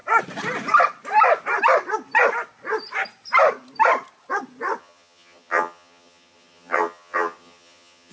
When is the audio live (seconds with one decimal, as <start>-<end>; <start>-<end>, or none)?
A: 0.0-4.8